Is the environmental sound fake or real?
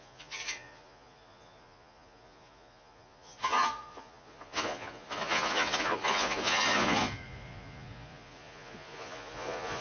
fake